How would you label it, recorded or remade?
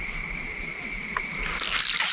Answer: recorded